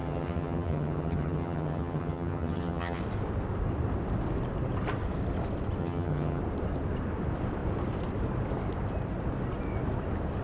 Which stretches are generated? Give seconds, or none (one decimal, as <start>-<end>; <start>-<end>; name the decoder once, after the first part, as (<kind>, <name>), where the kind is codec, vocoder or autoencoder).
0.0-3.0 (vocoder, HiFi-GAN); 5.8-6.4